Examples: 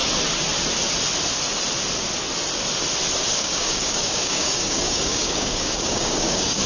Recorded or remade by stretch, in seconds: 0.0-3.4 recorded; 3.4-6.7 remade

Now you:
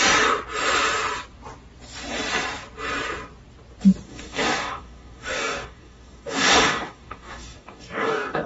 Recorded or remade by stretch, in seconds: 0.0-4.1 recorded; 4.1-8.5 remade

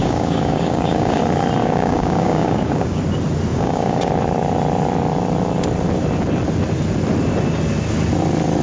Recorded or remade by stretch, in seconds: 0.0-1.2 remade; 1.2-1.6 recorded; 1.6-3.0 remade; 3.0-3.5 recorded; 3.5-4.1 remade; 4.1-8.6 recorded

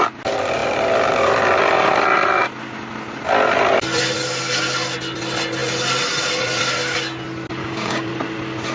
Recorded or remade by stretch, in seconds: 0.0-7.6 recorded; 7.6-8.1 remade; 8.1-8.7 recorded

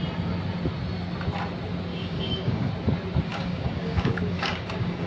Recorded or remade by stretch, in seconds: 0.0-1.9 recorded; 1.9-2.7 remade; 2.7-3.3 recorded; 3.3-5.1 remade